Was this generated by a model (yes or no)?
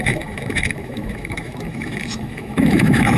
yes